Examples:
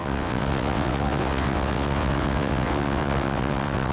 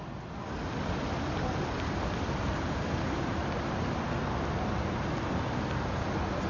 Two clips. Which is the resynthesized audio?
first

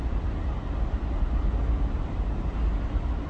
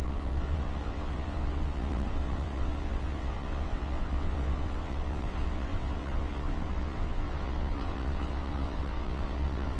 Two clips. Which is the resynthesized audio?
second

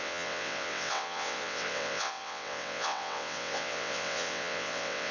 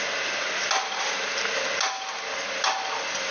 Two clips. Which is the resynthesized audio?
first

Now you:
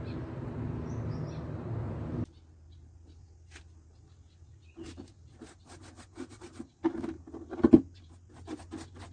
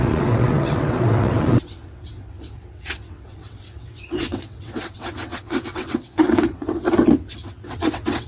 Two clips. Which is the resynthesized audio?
second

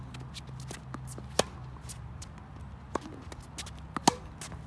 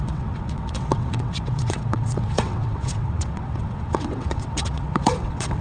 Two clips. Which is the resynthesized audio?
second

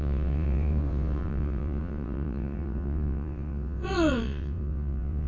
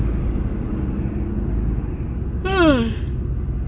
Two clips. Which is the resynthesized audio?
first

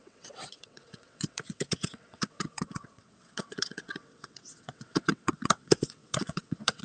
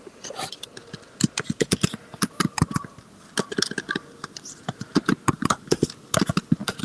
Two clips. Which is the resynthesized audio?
first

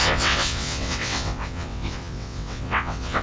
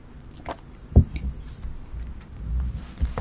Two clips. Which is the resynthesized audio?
first